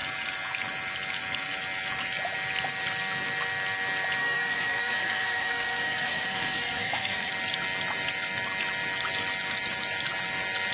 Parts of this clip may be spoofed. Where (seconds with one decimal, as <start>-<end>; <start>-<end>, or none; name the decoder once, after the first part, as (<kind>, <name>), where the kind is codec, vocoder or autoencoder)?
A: 4.2-7.3 (codec, SNAC)